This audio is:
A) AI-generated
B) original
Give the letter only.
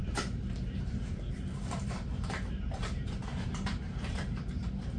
A